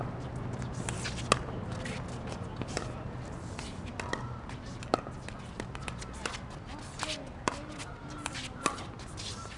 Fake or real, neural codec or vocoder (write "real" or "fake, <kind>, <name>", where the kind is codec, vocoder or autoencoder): real